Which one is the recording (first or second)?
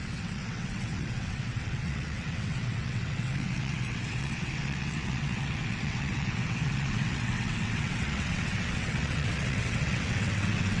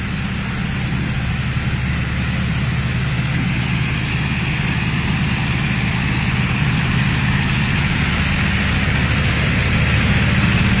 second